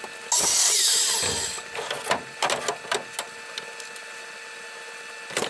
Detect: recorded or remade recorded